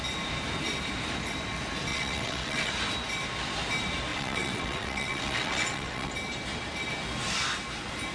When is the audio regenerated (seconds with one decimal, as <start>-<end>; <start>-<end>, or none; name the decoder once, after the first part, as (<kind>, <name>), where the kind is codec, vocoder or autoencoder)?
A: 1.9-2.7 (vocoder, WaveNeXt); 4.1-6.1